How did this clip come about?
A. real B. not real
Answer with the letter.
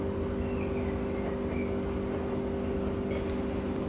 A